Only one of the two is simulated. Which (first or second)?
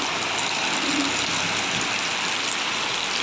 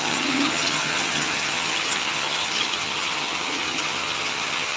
second